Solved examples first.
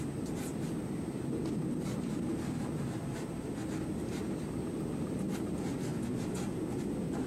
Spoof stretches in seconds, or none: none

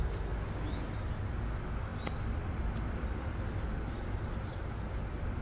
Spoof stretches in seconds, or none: none

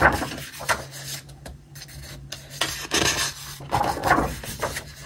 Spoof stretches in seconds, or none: 4.0-5.1

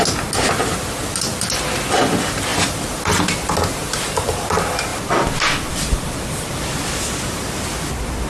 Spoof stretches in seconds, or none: 4.9-7.5